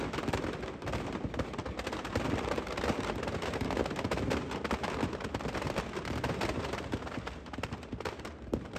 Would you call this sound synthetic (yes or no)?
no